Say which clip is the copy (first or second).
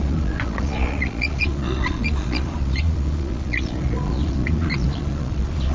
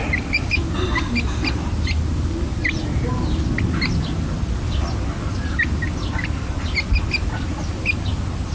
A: first